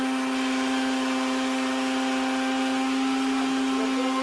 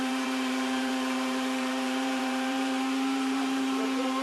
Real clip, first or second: first